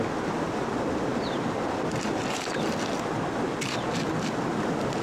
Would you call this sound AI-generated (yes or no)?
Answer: no